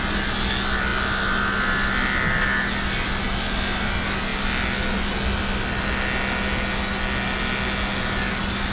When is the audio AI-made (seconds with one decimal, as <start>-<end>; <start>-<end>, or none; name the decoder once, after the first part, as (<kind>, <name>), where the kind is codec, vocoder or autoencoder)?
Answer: none